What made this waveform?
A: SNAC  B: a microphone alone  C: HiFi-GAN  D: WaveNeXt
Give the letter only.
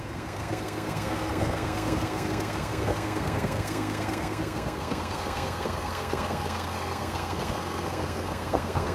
A